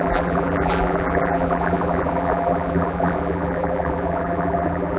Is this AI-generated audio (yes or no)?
yes